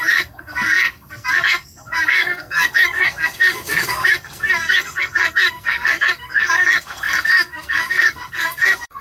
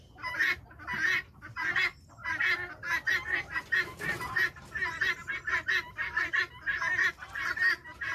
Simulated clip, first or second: first